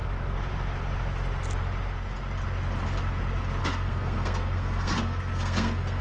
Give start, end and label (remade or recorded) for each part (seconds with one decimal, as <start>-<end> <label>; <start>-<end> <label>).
0.0-3.6 recorded; 3.6-6.0 remade